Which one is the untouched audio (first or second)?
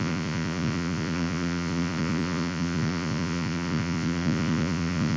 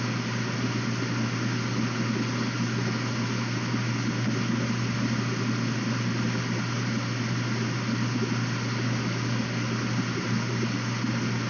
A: second